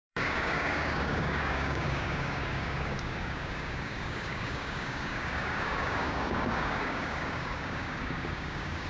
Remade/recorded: remade